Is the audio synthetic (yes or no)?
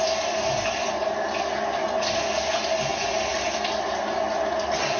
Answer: no